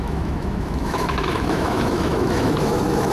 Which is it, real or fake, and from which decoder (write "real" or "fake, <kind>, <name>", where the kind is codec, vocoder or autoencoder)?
fake, autoencoder, DAC-VAE